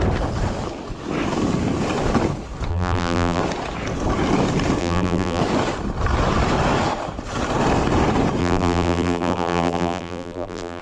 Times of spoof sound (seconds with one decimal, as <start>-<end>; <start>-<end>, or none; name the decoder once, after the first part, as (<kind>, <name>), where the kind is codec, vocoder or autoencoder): 2.7-3.4 (vocoder, BigVGAN v2); 4.8-5.4; 8.4-10.8